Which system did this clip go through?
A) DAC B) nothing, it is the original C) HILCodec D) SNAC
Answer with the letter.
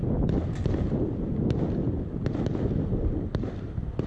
B